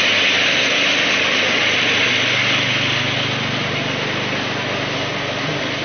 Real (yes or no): yes